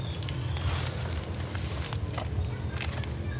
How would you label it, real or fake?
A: real